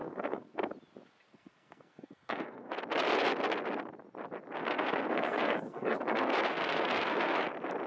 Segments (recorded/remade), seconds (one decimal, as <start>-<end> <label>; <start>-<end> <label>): 0.0-0.7 remade; 0.7-1.3 recorded; 1.3-2.7 remade; 2.7-4.6 recorded; 4.6-7.4 remade; 7.4-7.9 recorded